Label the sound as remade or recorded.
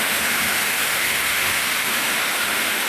remade